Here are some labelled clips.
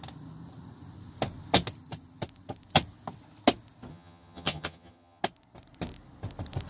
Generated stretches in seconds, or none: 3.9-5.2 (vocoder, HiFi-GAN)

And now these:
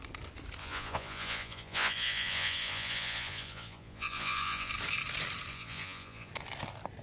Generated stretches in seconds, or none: 0.6-4.7 (vocoder, Vocos); 5.5-6.3

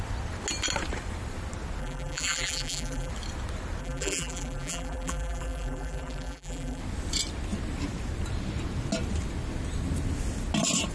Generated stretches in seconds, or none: 1.8-3.1 (vocoder, BigVGAN v2); 3.8-6.8

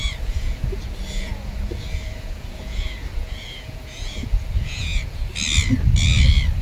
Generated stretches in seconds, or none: 0.0-5.2 (vocoder, Vocos)

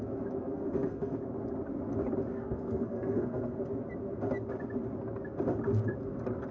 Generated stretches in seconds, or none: 0.4-1.1 (codec, SNAC); 2.3-3.6

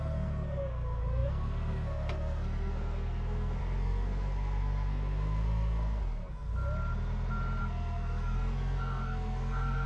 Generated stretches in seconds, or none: 0.0-6.5 (codec, SNAC); 7.6-9.9

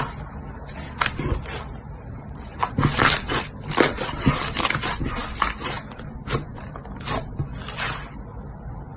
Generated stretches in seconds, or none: none

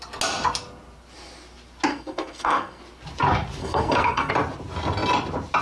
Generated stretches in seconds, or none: 1.9-2.8 (codec, SNAC); 3.6-4.3